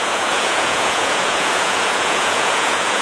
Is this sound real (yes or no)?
no